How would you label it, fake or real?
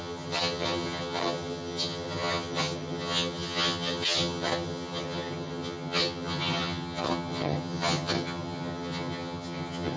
fake